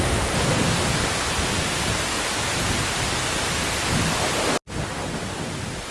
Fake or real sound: real